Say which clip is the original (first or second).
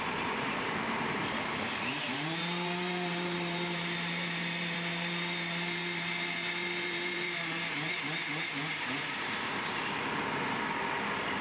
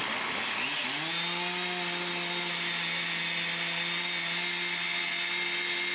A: second